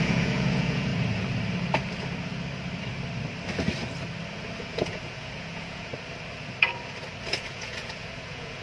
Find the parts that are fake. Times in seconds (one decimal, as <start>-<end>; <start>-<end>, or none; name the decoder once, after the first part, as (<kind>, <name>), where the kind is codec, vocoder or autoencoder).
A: 0.0-0.9 (vocoder, Vocos); 4.6-5.9; 7.3-8.6